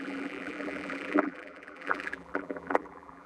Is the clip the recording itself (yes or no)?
no